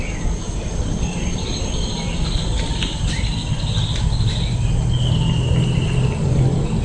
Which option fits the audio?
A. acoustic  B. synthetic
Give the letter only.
A